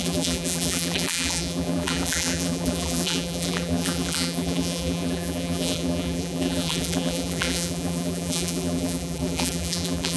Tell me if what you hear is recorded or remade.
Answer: remade